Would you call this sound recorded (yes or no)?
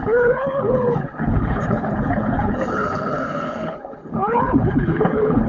no